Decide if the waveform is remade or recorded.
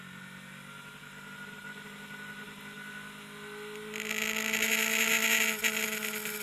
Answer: recorded